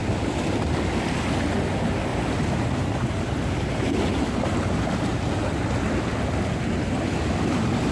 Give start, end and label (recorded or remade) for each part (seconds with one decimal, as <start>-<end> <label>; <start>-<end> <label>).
0.0-2.1 recorded; 2.1-3.3 remade; 3.3-7.9 recorded